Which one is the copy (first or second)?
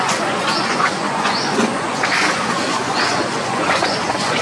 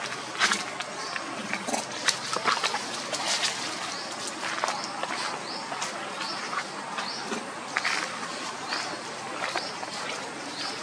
first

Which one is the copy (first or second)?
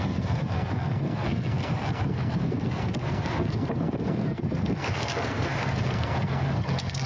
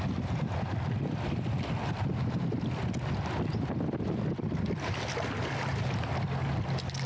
first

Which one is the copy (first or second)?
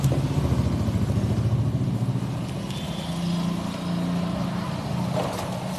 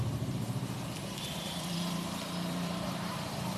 second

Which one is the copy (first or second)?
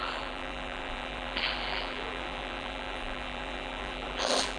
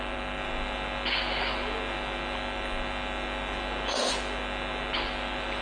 first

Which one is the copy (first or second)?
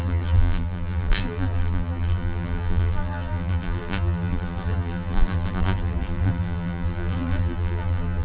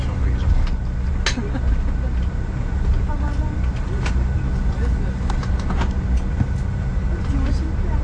first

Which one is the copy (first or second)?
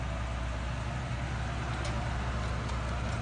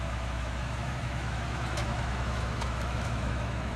second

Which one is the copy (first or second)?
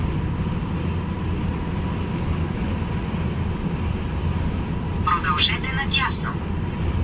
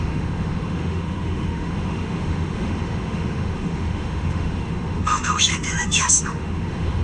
second